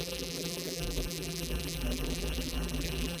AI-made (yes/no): yes